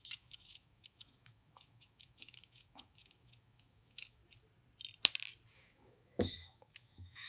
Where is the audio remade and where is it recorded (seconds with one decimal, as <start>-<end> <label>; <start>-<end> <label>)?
0.0-4.2 remade; 4.2-5.5 recorded; 5.5-7.3 remade